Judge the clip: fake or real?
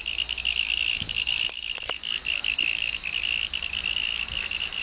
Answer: real